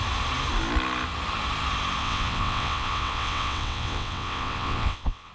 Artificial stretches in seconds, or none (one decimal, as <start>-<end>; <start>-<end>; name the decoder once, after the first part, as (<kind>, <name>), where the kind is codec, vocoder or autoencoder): 2.0-5.3 (vocoder, WaveNeXt)